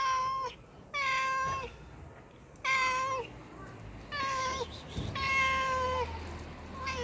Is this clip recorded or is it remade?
recorded